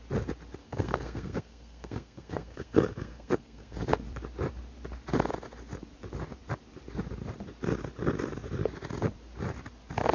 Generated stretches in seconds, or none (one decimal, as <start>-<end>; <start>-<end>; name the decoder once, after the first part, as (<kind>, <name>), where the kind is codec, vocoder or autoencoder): 0.6-3.9 (codec, SNAC)